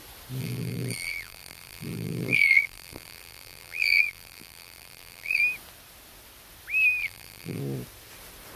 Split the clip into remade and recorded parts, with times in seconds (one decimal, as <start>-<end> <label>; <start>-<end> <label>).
0.0-0.4 recorded; 0.4-5.4 remade; 5.4-7.0 recorded; 7.0-7.6 remade; 7.6-8.6 recorded